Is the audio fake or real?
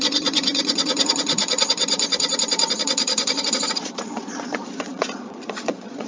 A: fake